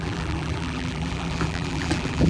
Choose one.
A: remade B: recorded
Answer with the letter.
A